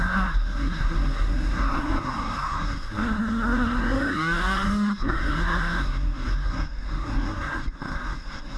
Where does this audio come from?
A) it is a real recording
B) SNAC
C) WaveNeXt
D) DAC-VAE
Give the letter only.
B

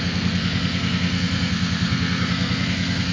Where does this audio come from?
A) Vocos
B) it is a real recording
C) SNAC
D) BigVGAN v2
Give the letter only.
C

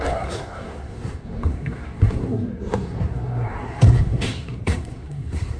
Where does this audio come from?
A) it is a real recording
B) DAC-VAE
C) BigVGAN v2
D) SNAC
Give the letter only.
D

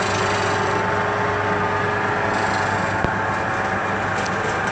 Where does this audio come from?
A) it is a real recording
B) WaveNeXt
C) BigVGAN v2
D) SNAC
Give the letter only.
A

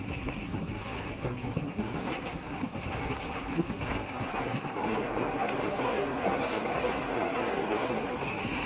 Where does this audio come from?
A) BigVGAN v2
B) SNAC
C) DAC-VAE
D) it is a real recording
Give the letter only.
B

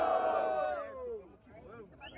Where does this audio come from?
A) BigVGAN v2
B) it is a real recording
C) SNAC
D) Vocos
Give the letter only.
B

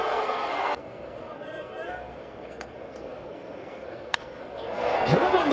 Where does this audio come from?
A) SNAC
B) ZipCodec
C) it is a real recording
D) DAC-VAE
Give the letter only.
A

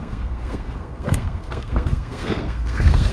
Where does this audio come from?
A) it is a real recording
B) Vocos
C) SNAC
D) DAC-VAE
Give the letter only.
C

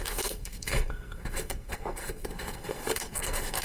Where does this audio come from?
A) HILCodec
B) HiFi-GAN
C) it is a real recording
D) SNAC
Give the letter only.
D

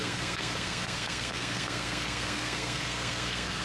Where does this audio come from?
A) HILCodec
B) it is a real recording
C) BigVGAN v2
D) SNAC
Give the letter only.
D